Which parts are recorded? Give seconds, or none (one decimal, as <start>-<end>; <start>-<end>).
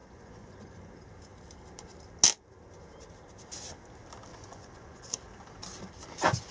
0.9-4.3; 5.1-6.5